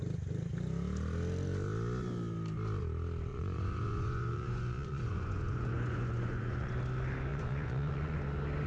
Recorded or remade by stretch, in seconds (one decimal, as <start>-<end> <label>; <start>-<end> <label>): 0.0-3.3 recorded; 3.3-6.7 remade; 6.7-7.3 recorded; 7.3-8.2 remade; 8.2-8.7 recorded